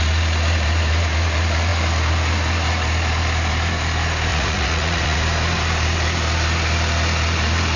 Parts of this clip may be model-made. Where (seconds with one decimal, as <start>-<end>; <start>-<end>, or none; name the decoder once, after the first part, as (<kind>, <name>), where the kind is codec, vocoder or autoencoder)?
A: 4.3-5.2 (vocoder, Vocos)